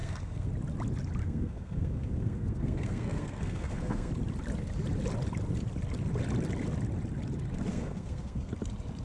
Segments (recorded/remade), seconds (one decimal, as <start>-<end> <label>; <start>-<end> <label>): 0.0-0.5 remade; 0.5-1.2 recorded; 1.2-4.1 remade; 4.1-7.7 recorded; 7.7-8.5 remade; 8.5-9.0 recorded